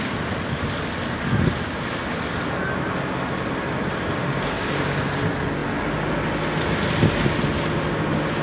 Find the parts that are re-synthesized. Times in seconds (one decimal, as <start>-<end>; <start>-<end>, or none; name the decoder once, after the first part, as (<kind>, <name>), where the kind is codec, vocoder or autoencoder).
4.2-5.0 (codec, DAC)